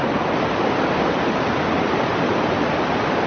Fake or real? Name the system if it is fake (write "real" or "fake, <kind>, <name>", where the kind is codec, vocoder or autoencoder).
real